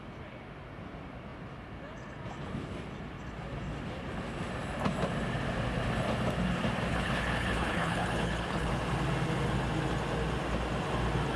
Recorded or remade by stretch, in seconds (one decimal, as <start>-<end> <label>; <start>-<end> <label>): 0.0-6.9 recorded; 6.9-8.7 remade; 8.7-11.4 recorded